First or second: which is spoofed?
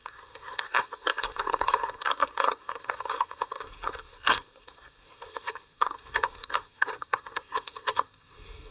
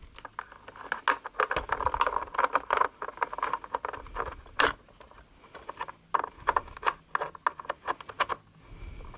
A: first